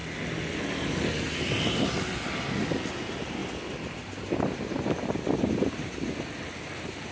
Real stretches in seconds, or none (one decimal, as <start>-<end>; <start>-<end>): 0.0-7.1